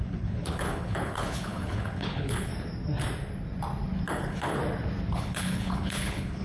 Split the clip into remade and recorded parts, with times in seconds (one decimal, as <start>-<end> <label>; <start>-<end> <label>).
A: 0.0-2.5 remade; 2.5-4.1 recorded; 4.1-4.6 remade; 4.6-5.1 recorded; 5.1-6.4 remade